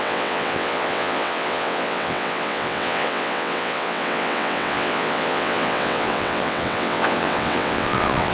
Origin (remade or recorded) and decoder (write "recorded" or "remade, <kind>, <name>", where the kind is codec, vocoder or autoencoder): remade, vocoder, WaveNeXt